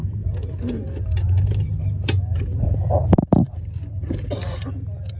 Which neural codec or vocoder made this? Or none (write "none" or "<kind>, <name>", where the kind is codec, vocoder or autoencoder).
none